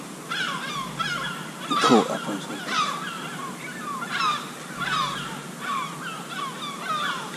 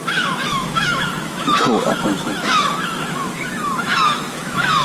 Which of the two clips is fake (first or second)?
second